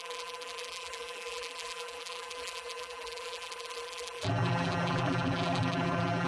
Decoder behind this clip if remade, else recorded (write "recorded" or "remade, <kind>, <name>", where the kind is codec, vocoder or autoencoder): remade, vocoder, BigVGAN v2